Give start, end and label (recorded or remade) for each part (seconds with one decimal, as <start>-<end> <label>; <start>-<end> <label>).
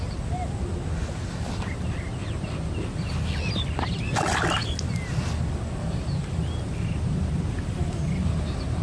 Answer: 0.0-8.8 recorded